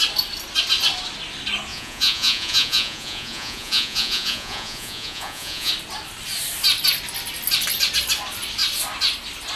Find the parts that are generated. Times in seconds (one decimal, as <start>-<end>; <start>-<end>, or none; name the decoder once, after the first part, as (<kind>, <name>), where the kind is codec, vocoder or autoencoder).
1.7-5.7 (vocoder, Vocos)